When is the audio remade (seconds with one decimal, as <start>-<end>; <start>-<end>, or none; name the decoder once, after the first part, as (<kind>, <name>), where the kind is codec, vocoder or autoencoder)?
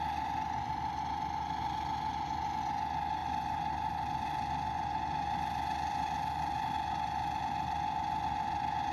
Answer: none